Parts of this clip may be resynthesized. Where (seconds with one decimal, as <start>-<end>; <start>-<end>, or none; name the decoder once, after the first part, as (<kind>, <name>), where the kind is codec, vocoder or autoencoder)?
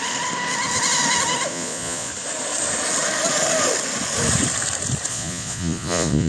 1.5-2.1 (vocoder, Vocos); 5.1-6.3